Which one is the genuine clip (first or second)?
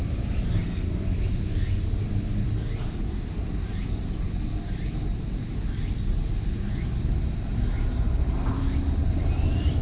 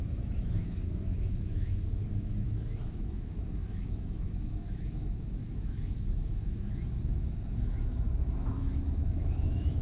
first